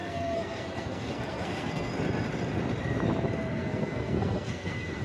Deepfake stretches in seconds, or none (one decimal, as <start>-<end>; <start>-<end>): 0.0-1.9; 3.5-5.0

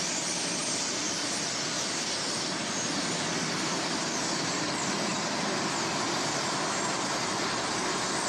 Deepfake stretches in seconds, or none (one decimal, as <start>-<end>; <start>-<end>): none